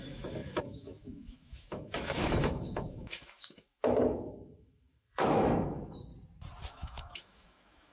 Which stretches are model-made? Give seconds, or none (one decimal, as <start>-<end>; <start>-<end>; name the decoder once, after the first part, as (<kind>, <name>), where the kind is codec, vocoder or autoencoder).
0.0-6.1 (autoencoder, DAC-VAE); 6.7-7.9